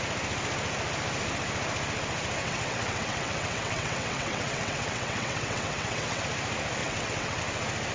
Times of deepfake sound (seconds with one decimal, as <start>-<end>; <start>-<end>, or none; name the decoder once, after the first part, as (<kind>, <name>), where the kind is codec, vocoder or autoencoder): 2.4-6.2 (vocoder, WaveNeXt); 6.8-7.4